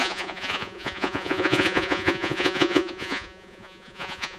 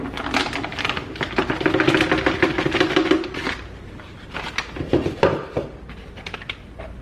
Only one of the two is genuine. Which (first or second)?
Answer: second